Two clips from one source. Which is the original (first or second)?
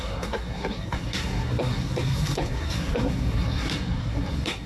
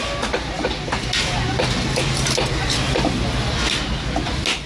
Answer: second